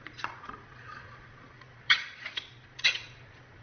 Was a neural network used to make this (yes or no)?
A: yes